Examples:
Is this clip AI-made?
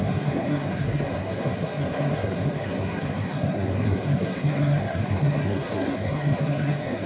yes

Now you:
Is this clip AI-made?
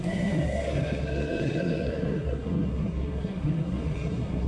yes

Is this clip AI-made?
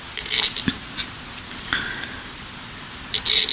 no